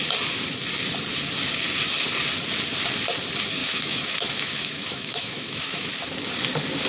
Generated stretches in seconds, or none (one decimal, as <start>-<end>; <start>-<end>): 3.6-5.9